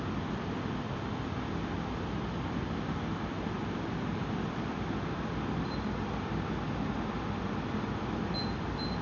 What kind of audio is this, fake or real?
real